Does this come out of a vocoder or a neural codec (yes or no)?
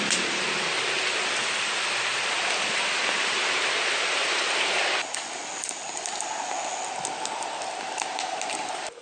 no